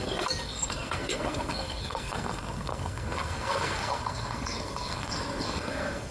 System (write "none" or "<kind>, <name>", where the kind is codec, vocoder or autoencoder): codec, SNAC